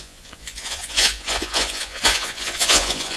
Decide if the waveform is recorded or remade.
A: remade